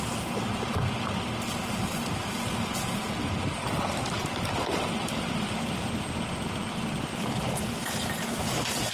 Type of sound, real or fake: real